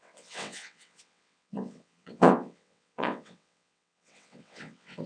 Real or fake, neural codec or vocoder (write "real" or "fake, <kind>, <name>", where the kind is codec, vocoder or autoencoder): fake, vocoder, WaveNeXt